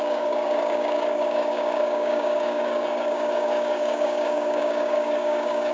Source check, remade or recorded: remade